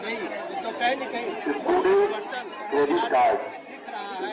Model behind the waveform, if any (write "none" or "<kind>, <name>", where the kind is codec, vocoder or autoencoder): none